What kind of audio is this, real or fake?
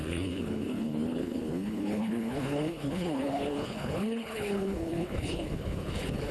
fake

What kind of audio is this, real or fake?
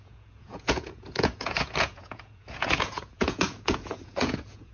fake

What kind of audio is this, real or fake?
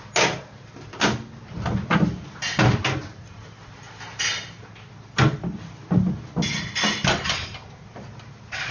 real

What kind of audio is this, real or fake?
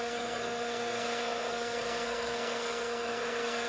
fake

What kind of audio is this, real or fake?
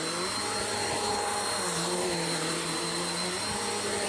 real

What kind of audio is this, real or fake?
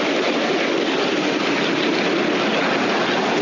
real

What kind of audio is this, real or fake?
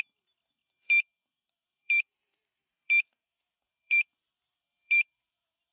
fake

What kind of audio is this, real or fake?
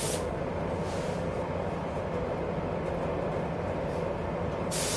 real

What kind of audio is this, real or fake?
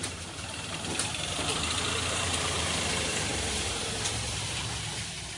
fake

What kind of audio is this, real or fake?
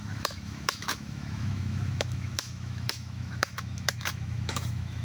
fake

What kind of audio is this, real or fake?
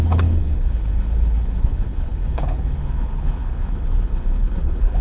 fake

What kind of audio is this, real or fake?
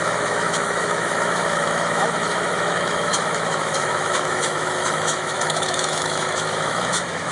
fake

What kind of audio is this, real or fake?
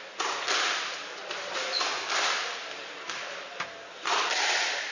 real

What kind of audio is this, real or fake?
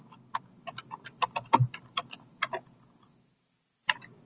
real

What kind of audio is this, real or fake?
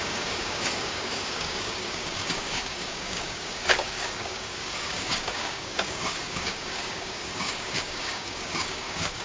fake